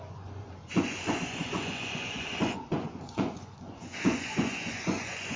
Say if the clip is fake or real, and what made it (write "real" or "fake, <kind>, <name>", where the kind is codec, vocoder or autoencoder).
fake, vocoder, Vocos